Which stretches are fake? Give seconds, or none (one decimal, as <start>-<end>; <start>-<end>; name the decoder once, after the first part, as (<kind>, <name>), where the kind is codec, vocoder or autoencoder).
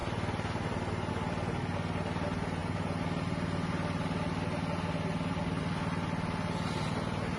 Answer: none